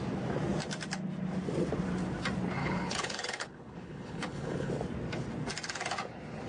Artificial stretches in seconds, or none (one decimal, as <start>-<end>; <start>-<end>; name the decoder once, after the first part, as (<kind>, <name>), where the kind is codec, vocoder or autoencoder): 2.6-4.7 (codec, HILCodec)